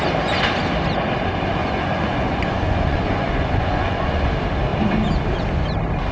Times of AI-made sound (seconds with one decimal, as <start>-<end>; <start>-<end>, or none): 1.6-4.3